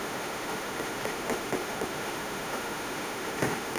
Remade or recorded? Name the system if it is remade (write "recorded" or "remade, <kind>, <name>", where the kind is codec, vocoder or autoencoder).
remade, autoencoder, DAC-VAE